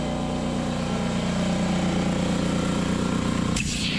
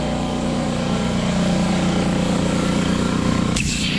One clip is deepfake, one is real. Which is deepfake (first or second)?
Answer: second